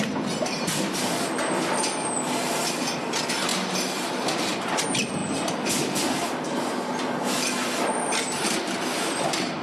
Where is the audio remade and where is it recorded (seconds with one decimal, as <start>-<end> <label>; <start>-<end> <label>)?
0.0-9.6 recorded

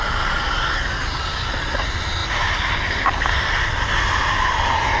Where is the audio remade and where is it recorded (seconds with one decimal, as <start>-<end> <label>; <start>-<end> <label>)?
0.0-2.2 recorded; 2.2-4.0 remade; 4.0-5.0 recorded

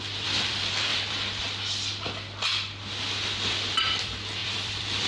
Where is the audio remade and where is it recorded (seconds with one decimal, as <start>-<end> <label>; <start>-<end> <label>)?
0.0-0.9 remade; 0.9-4.0 recorded; 4.0-5.1 remade

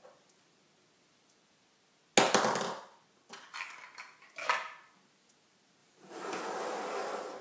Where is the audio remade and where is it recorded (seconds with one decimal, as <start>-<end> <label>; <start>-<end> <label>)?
0.0-5.8 recorded; 5.8-6.4 remade; 6.4-7.4 recorded

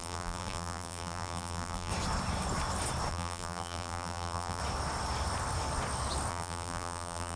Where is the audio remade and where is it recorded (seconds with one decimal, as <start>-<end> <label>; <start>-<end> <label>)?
0.0-1.9 remade; 1.9-3.1 recorded; 3.1-4.6 remade; 4.6-6.3 recorded; 6.3-7.4 remade

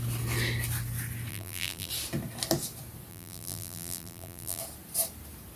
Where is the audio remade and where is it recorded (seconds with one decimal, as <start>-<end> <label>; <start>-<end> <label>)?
0.0-1.3 recorded; 1.3-1.9 remade; 1.9-3.1 recorded; 3.1-4.6 remade; 4.6-5.6 recorded

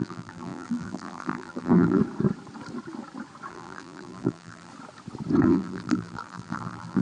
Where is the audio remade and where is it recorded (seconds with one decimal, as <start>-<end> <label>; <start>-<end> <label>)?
0.0-2.0 remade; 2.0-3.5 recorded; 3.5-4.7 remade; 4.7-5.4 recorded; 5.4-7.0 remade